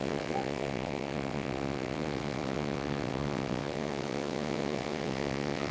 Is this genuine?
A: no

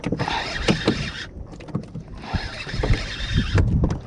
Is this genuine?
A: yes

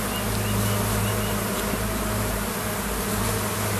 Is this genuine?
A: yes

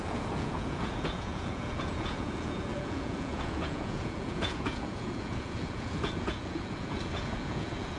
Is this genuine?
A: no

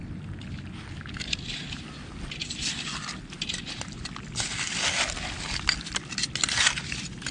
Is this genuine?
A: yes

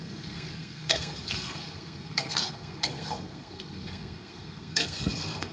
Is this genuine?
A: no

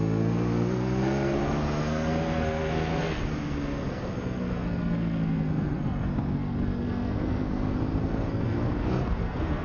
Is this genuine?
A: no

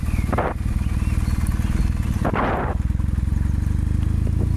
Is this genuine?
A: yes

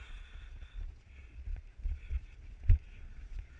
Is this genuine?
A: no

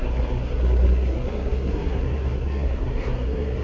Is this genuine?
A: no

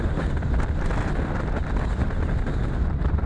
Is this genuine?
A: yes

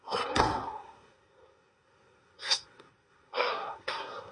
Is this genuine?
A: no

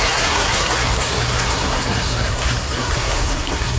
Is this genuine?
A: no